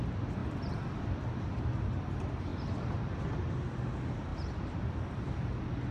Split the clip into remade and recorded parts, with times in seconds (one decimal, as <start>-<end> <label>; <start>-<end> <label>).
0.0-0.4 recorded; 0.4-1.0 remade; 1.0-4.3 recorded; 4.3-5.3 remade; 5.3-5.9 recorded